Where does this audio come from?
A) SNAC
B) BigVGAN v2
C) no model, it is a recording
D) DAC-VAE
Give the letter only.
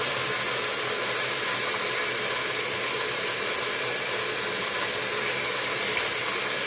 C